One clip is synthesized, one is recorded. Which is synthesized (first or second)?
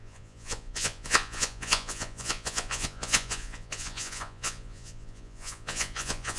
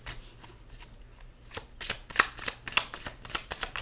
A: first